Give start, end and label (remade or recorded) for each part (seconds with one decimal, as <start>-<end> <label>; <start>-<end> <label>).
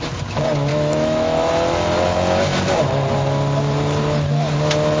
0.0-0.7 recorded; 0.7-1.5 remade; 1.5-5.0 recorded